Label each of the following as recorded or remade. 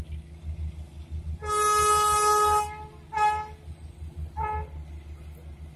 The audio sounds recorded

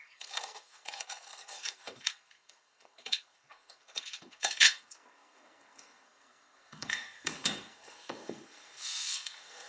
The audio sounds remade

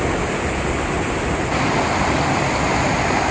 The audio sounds recorded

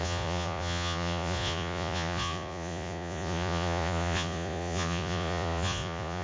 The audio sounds remade